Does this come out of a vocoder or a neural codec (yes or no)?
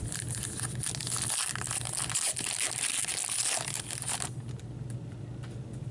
no